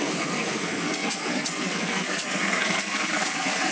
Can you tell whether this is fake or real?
fake